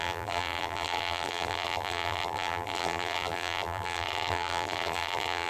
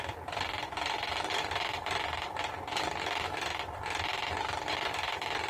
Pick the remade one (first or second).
first